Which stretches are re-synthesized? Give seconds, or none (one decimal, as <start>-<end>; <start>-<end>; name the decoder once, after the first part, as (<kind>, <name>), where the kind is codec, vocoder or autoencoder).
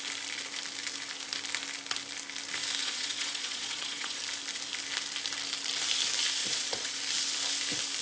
2.8-4.2 (vocoder, Vocos); 6.4-7.0